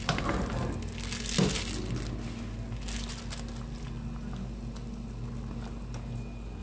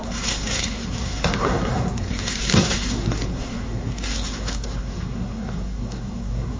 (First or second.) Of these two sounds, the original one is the first